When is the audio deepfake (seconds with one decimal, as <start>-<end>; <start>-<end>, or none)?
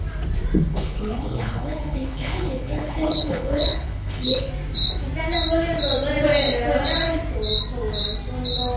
0.7-4.5